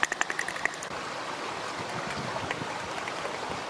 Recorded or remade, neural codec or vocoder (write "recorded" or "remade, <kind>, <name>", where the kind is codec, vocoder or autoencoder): recorded